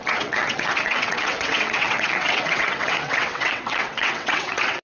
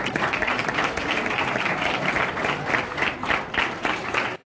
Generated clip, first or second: first